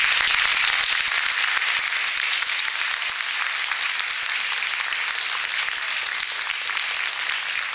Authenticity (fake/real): real